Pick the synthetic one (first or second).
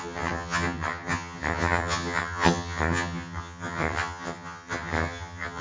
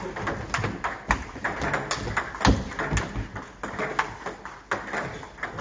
first